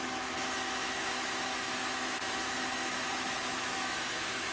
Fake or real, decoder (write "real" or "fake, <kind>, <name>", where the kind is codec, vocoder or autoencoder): fake, autoencoder, DAC-VAE